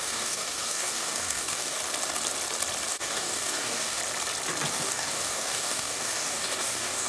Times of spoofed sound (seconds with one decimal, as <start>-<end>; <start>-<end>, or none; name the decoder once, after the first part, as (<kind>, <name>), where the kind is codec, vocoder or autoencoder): 0.0-1.8 (codec, DAC); 2.9-4.0; 4.7-7.1